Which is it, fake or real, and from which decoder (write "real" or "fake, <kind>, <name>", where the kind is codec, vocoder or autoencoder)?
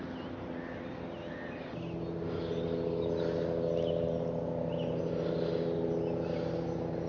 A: real